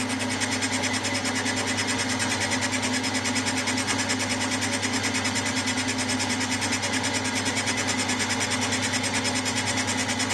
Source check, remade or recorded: recorded